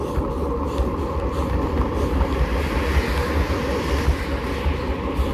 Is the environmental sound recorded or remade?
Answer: recorded